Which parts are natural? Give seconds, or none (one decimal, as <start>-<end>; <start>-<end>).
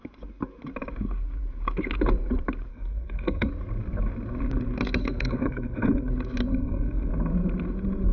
0.0-2.7; 3.5-5.0; 6.1-6.5; 7.1-8.1